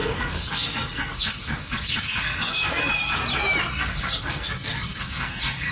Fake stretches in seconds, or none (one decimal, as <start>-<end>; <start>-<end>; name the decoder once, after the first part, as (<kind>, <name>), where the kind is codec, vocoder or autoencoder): 0.0-2.8 (codec, SNAC); 3.7-5.7